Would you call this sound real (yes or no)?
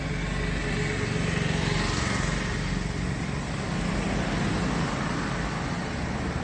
yes